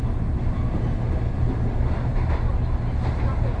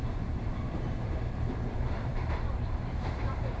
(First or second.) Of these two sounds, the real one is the first